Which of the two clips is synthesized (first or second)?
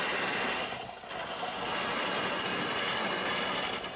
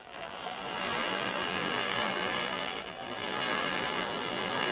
second